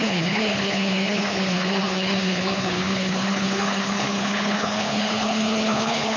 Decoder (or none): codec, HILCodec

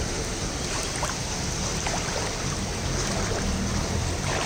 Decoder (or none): none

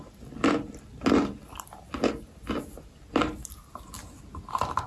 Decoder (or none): none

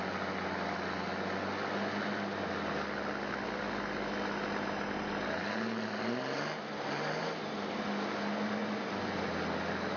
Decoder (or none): none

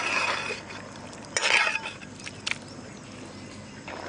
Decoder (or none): none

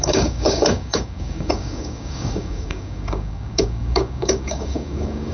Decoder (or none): codec, DAC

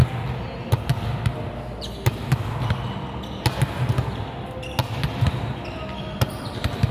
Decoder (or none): none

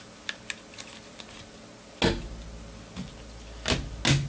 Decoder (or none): none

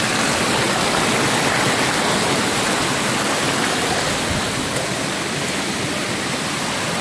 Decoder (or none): none